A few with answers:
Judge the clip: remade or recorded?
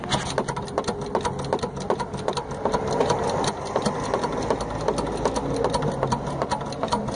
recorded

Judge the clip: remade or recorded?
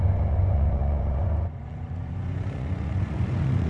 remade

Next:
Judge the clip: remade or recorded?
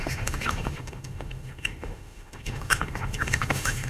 remade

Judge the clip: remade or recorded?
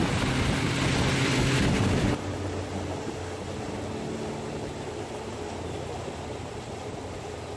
recorded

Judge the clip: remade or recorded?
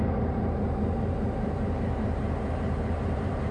remade